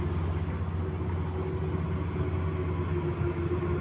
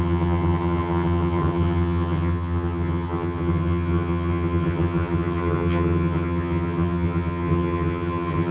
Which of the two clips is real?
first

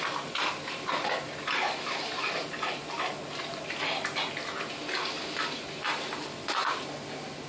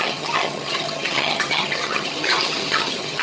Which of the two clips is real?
first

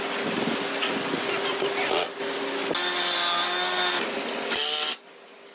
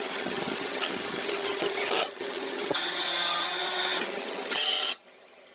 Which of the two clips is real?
first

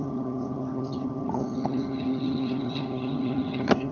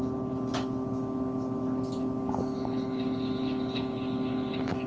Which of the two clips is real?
second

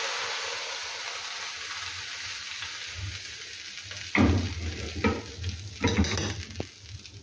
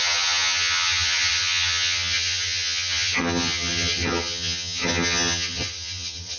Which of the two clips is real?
first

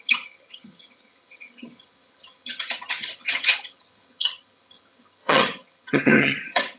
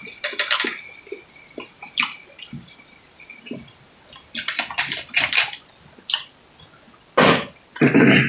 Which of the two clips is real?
second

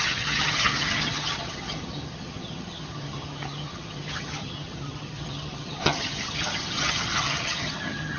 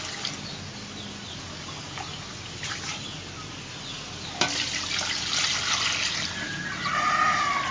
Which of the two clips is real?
second